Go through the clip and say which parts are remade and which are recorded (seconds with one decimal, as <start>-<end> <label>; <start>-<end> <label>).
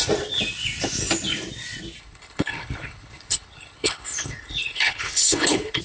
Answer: 0.0-2.0 recorded; 2.0-5.8 remade